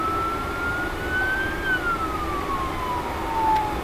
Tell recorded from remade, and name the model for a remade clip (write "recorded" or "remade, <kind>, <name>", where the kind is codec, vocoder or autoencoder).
recorded